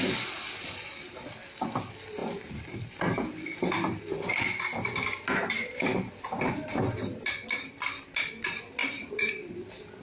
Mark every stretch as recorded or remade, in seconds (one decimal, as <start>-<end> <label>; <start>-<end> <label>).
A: 0.0-2.2 recorded; 2.2-7.3 remade; 7.3-8.8 recorded; 8.8-9.5 remade; 9.5-10.0 recorded